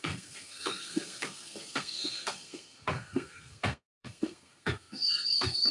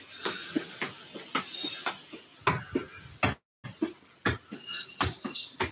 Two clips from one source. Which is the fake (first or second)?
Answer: first